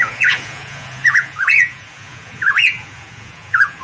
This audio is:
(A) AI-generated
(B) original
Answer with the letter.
A